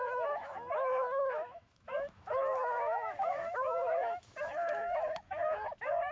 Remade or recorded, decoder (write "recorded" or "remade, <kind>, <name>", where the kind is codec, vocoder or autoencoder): remade, autoencoder, DAC-VAE